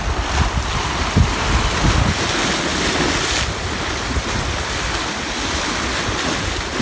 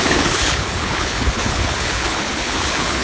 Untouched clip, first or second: first